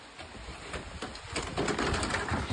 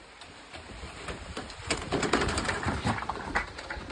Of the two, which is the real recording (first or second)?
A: first